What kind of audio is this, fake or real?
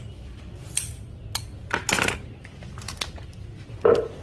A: real